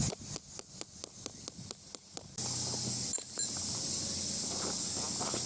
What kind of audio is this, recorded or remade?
recorded